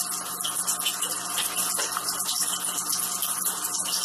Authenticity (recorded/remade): recorded